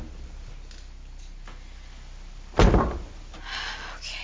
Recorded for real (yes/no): yes